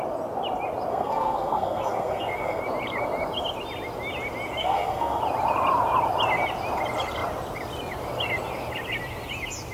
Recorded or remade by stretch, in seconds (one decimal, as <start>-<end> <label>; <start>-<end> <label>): 0.0-0.9 recorded; 0.9-2.6 remade; 2.6-4.6 recorded; 4.6-5.2 remade; 5.2-9.7 recorded